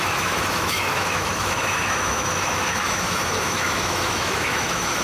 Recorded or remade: remade